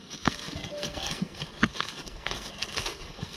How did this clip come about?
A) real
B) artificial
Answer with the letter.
B